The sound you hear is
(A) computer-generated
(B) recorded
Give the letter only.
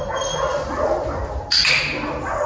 B